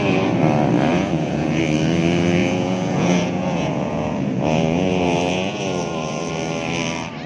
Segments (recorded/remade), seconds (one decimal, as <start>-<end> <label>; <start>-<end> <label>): 0.0-0.9 recorded; 0.9-1.6 remade; 1.6-2.4 recorded; 2.4-6.3 remade; 6.3-7.3 recorded